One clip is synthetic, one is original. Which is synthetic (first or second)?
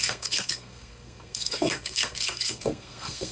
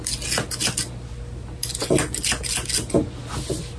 first